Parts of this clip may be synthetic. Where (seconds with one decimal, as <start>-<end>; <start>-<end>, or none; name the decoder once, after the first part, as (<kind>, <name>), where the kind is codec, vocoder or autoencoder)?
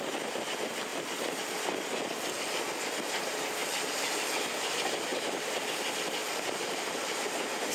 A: 0.9-1.6 (vocoder, BigVGAN v2); 3.6-4.4; 5.1-5.6; 6.2-7.7